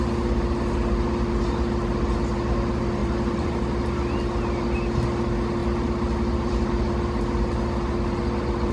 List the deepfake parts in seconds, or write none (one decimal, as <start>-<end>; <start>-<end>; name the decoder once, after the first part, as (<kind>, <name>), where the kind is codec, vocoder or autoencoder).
3.0-3.5 (vocoder, BigVGAN v2)

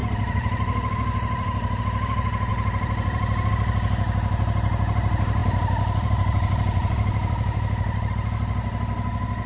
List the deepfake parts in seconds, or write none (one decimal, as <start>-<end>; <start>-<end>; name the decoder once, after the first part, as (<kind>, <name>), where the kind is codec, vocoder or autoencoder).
0.0-1.8 (vocoder, BigVGAN v2); 2.5-3.5; 5.4-8.1

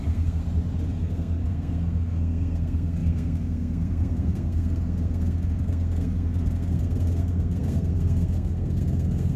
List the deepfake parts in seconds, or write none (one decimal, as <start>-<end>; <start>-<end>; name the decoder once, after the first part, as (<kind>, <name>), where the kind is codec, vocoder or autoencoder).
0.0-0.4 (codec, SNAC); 0.9-9.4

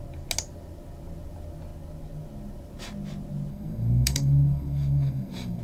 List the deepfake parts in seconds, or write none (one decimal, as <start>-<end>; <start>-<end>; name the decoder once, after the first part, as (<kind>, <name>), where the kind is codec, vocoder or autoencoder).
3.5-5.6 (codec, SNAC)

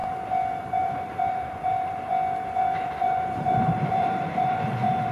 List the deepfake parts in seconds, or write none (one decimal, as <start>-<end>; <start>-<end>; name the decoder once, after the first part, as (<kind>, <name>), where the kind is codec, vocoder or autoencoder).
0.6-2.1 (vocoder, BigVGAN v2); 2.6-5.1